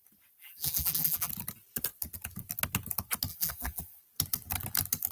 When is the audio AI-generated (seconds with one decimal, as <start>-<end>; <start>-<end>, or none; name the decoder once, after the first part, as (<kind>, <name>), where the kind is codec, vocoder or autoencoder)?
0.4-1.3 (vocoder, BigVGAN v2); 3.3-4.0